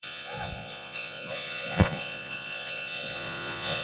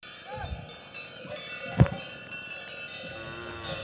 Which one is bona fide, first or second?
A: second